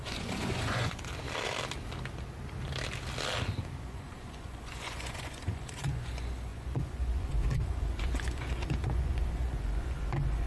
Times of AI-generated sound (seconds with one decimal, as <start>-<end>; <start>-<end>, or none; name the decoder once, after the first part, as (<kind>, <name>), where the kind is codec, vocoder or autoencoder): 0.0-1.1 (vocoder, Vocos); 3.8-10.5